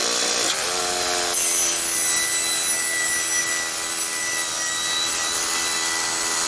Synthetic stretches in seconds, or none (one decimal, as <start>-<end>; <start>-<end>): 0.0-0.8